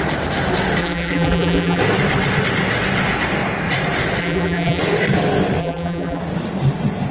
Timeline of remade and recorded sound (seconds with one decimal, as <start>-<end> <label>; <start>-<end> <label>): 0.0-0.8 recorded; 0.8-1.8 remade; 1.8-4.2 recorded; 4.2-4.8 remade; 4.8-5.6 recorded; 5.6-6.2 remade; 6.2-7.1 recorded